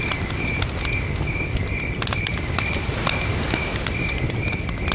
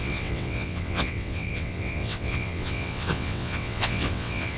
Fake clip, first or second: second